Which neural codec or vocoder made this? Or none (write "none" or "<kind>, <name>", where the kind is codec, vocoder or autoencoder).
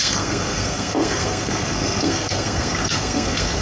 codec, SNAC